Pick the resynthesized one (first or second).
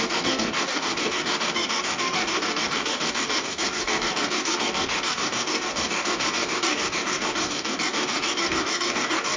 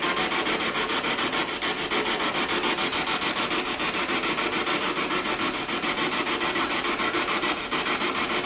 first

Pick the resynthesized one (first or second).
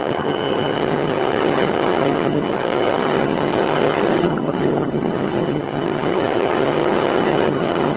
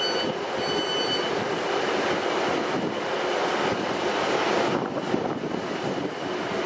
first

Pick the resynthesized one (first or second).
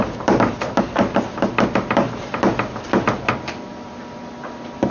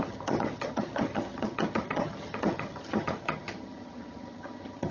second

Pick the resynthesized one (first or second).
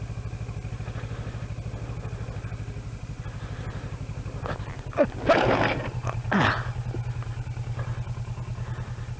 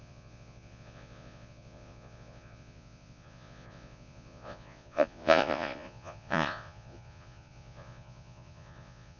second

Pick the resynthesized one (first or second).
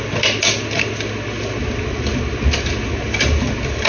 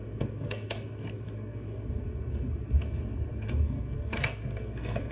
second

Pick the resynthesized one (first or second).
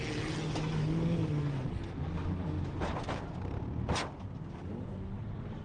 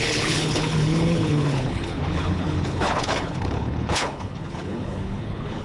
second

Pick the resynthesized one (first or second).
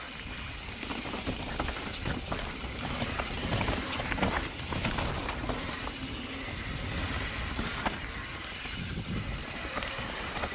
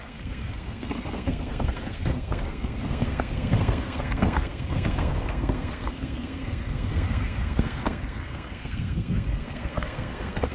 second